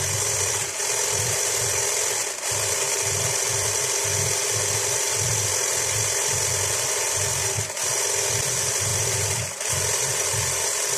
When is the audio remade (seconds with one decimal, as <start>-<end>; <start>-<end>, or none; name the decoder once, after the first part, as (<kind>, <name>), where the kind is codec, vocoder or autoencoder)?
8.9-10.1 (vocoder, BigVGAN v2)